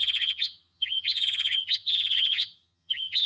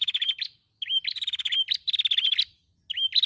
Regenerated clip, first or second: first